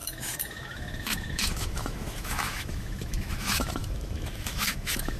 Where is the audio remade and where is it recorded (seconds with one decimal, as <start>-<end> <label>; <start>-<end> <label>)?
0.0-5.2 remade